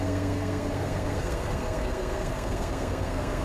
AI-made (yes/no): yes